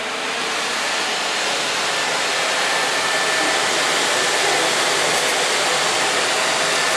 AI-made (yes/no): no